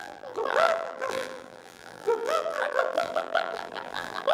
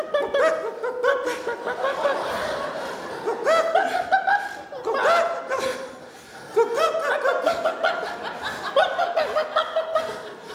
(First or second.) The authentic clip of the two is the second